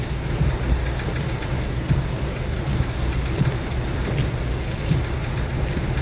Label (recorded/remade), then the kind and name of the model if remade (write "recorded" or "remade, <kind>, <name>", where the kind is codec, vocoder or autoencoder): remade, vocoder, BigVGAN v2